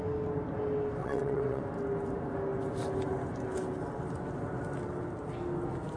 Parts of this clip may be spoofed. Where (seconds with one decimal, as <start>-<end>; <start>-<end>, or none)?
1.0-1.6